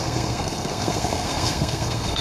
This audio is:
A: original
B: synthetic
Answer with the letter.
B